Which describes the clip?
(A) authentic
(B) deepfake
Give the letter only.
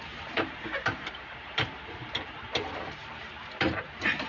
B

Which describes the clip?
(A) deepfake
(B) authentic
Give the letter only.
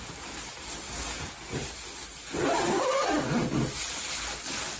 B